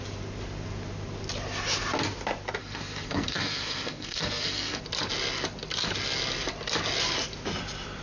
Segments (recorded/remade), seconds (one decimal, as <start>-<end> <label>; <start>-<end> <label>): 0.0-2.6 recorded; 2.6-4.8 remade; 4.8-8.0 recorded